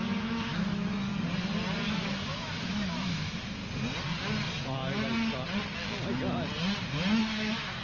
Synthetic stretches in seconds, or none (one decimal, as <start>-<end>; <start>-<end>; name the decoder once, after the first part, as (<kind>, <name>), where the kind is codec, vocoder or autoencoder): 0.0-1.1 (autoencoder, DAC-VAE); 1.9-3.6; 7.2-7.8